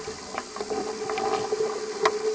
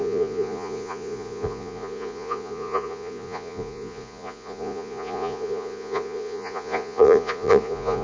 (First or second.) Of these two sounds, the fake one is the second